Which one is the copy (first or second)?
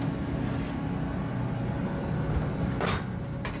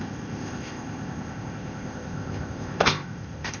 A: second